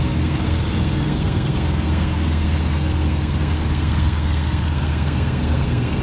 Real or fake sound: fake